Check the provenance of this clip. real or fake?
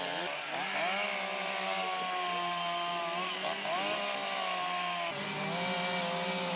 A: real